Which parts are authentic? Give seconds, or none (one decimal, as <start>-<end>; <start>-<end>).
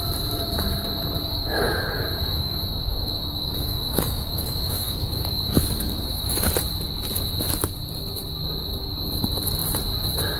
0.0-1.3; 6.5-10.4